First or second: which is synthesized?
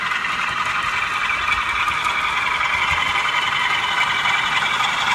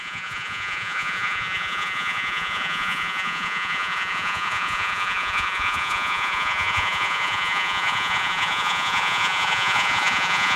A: second